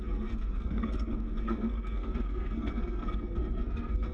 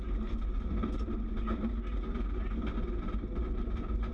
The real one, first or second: second